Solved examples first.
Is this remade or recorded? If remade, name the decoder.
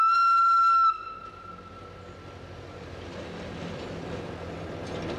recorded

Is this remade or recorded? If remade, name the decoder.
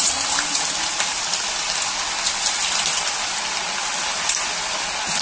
recorded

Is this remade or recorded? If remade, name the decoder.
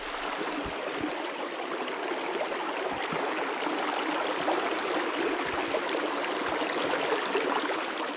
recorded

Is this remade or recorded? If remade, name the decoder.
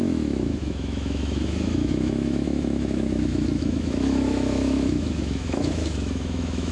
remade, autoencoder, DAC-VAE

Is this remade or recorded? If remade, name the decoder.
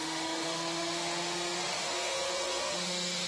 remade, autoencoder, DAC-VAE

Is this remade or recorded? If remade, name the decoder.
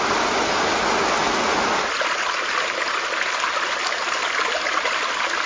recorded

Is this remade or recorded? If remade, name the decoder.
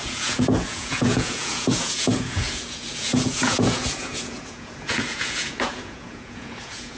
remade, vocoder, Vocos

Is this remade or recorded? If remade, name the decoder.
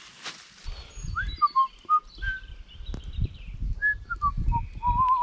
recorded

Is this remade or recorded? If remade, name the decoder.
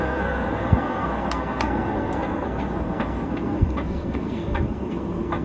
remade, codec, SNAC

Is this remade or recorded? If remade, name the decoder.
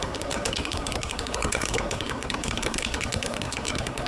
remade, codec, SNAC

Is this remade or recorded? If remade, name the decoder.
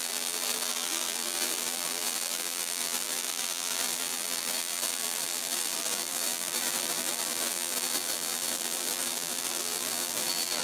remade, vocoder, BigVGAN v2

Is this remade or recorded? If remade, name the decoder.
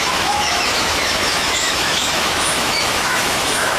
remade, autoencoder, DAC-VAE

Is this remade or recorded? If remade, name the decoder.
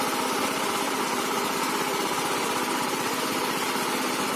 recorded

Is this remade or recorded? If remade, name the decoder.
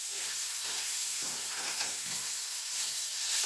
remade, codec, SNAC